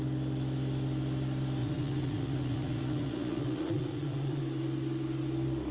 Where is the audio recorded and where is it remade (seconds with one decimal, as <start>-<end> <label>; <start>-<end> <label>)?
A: 0.0-1.6 recorded; 1.6-4.4 remade; 4.4-5.7 recorded